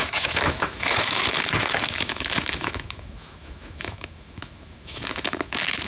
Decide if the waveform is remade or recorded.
remade